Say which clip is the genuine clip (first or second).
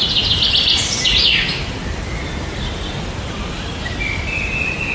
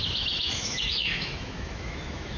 first